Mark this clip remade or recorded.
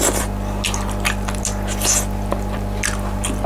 recorded